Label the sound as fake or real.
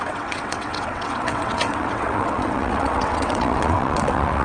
fake